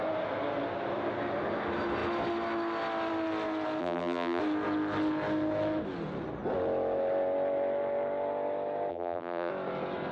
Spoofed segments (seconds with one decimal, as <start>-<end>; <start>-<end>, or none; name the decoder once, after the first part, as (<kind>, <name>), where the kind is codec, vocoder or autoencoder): 3.8-4.4 (vocoder, BigVGAN v2); 8.9-9.5